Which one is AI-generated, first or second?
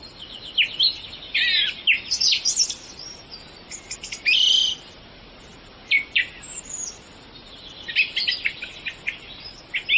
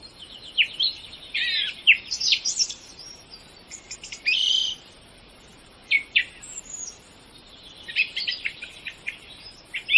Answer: second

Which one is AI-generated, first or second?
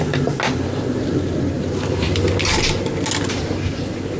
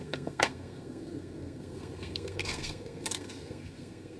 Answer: second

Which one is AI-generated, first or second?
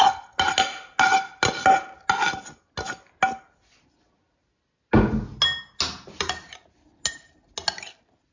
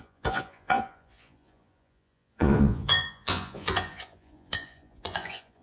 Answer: second